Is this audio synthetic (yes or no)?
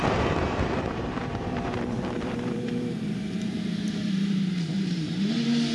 yes